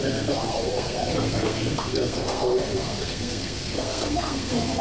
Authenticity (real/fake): fake